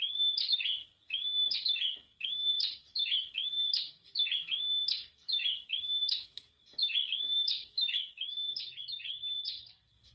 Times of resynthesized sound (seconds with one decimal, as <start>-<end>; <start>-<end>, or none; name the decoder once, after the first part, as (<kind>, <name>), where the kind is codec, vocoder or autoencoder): 0.0-10.1 (codec, DAC)